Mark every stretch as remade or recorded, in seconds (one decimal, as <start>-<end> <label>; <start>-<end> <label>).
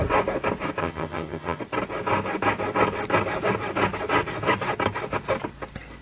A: 0.0-0.8 recorded; 0.8-1.6 remade; 1.6-6.0 recorded